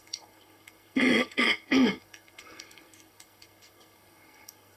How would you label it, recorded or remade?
remade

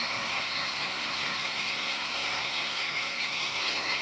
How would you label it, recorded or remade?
remade